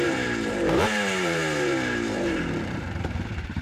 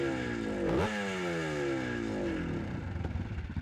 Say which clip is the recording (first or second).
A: second